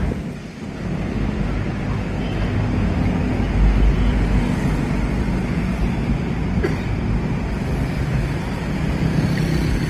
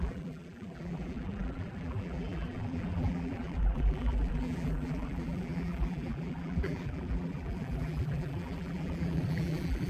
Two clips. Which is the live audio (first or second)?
first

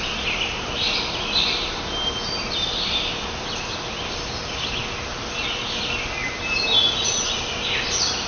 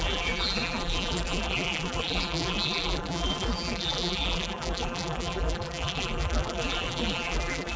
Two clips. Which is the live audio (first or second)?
first